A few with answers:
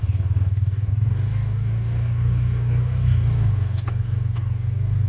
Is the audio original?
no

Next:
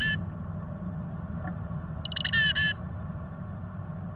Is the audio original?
yes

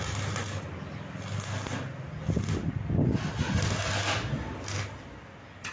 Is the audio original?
yes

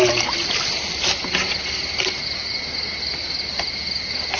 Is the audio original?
yes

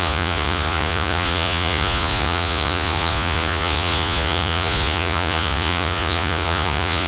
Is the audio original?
no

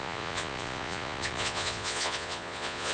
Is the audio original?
no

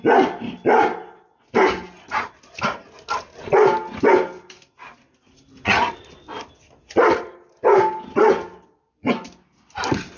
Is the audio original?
yes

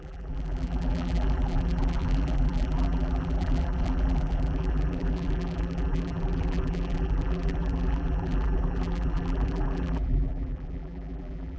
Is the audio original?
no